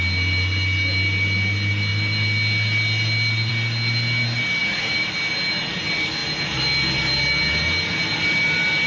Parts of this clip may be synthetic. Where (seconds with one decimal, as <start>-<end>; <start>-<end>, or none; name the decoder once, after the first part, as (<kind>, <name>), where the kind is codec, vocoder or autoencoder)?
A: 4.6-5.1 (vocoder, BigVGAN v2)